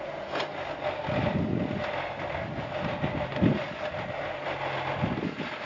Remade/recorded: recorded